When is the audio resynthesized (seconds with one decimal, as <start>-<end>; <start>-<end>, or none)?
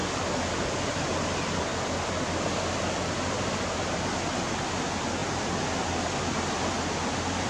none